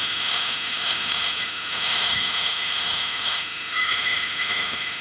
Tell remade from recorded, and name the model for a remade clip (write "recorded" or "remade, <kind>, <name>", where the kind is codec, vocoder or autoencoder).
remade, autoencoder, DAC-VAE